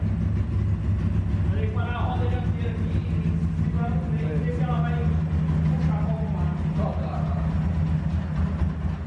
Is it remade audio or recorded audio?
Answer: recorded